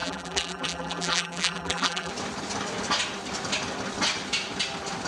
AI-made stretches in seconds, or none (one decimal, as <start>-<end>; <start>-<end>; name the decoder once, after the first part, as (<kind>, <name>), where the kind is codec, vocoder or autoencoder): 0.0-2.1 (vocoder, BigVGAN v2)